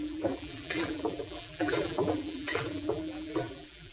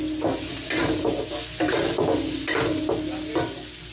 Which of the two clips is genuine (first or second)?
second